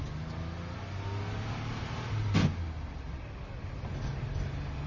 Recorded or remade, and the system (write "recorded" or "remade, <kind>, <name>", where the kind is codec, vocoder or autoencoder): recorded